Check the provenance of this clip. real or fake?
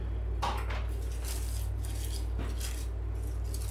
real